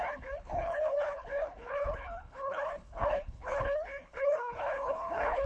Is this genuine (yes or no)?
no